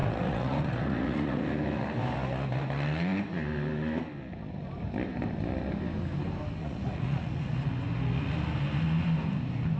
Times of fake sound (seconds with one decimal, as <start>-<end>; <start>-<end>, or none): 0.0-1.4; 6.6-7.5